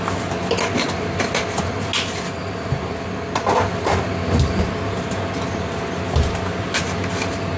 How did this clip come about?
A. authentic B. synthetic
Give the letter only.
A